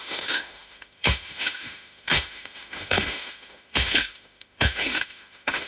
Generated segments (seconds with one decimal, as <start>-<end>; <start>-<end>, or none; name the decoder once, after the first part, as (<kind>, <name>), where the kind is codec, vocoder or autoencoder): 0.0-5.7 (autoencoder, DAC-VAE)